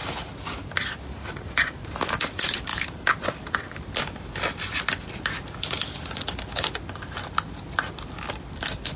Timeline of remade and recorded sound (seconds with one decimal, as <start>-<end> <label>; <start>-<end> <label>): 0.0-9.0 recorded